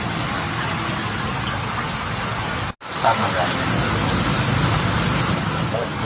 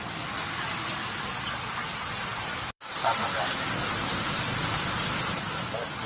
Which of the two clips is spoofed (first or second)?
second